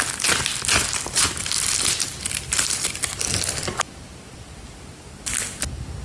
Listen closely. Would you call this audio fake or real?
real